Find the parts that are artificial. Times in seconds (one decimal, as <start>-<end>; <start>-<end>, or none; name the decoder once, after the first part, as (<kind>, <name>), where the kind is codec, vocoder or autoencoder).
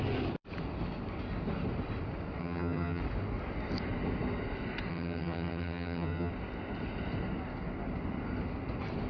2.4-3.0 (vocoder, HiFi-GAN); 4.9-6.3